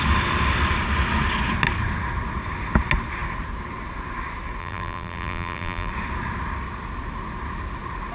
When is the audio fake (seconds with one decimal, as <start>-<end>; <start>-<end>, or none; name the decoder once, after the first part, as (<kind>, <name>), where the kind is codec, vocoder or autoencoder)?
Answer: 4.6-5.9 (vocoder, BigVGAN v2)